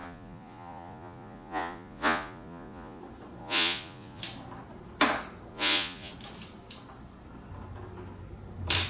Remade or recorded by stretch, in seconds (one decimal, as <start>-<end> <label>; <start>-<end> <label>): 0.0-3.0 remade; 3.0-3.4 recorded; 3.4-4.2 remade; 4.2-5.5 recorded; 5.5-6.1 remade; 6.1-8.9 recorded